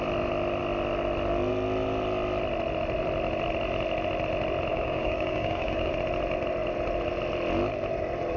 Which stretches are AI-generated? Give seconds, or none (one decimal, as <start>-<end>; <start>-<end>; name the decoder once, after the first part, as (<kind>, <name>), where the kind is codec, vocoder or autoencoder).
4.7-5.9 (codec, DAC)